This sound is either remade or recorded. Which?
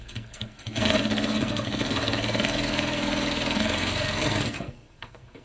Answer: remade